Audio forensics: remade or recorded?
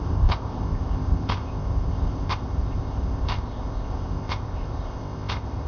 remade